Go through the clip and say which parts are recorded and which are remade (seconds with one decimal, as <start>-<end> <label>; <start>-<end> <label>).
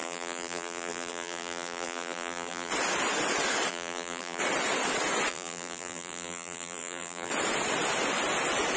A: 0.0-2.7 remade; 2.7-3.7 recorded; 3.7-4.4 remade; 4.4-5.3 recorded; 5.3-7.3 remade; 7.3-8.8 recorded